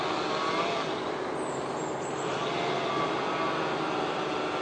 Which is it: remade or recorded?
recorded